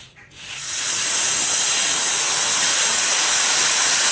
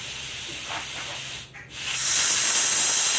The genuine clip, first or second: second